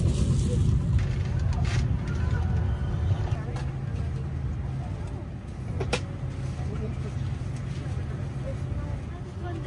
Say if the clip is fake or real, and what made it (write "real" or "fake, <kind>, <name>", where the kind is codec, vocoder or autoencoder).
real